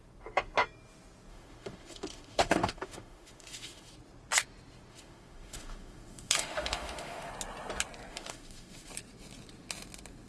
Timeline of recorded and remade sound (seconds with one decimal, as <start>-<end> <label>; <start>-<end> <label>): 0.0-1.3 recorded; 1.3-3.9 remade; 3.9-4.9 recorded; 4.9-7.3 remade; 7.3-8.1 recorded; 8.1-8.9 remade; 8.9-10.3 recorded